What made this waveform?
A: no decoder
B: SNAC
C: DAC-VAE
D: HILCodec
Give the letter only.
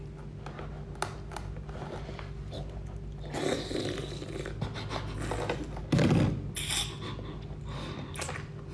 A